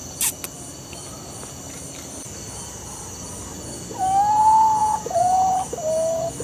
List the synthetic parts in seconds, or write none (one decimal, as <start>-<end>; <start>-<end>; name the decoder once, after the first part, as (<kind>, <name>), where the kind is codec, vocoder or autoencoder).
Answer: 4.8-5.6 (vocoder, Vocos)

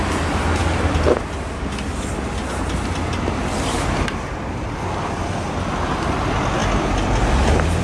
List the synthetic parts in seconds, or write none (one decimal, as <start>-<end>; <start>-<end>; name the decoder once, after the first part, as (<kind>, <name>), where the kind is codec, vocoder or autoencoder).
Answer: none